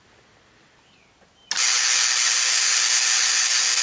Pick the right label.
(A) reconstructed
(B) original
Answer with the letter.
B